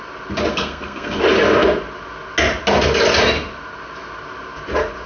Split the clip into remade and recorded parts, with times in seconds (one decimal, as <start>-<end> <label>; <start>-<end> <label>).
0.0-0.5 recorded; 0.5-1.2 remade; 1.2-5.1 recorded